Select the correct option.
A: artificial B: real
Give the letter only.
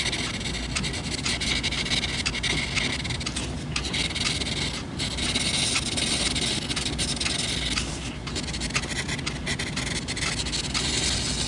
B